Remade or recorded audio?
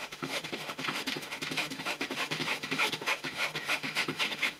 remade